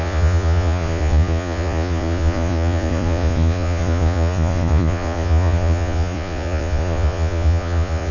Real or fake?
fake